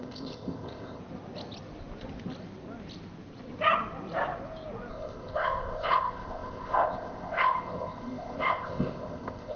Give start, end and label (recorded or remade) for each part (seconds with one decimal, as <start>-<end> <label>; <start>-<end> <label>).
0.0-1.0 remade; 1.0-4.9 recorded; 4.9-9.6 remade